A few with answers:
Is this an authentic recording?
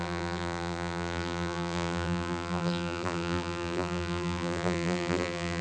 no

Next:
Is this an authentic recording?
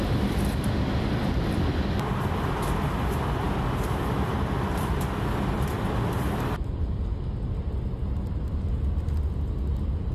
yes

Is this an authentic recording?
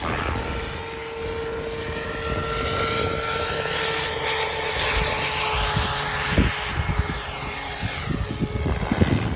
yes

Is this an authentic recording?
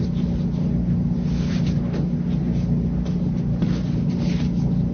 yes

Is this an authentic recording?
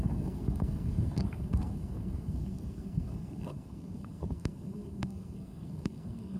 no